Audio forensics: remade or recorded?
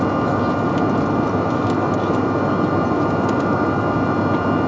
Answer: recorded